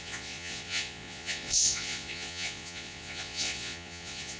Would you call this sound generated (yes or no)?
yes